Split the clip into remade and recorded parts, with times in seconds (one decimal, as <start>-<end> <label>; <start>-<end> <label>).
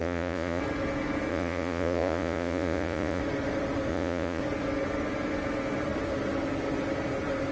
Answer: 0.0-0.6 remade; 0.6-1.3 recorded; 1.3-3.2 remade; 3.2-3.9 recorded; 3.9-4.4 remade; 4.4-7.5 recorded